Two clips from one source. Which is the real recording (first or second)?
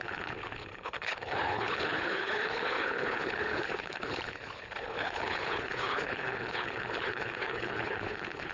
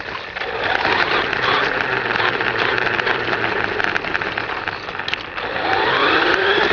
second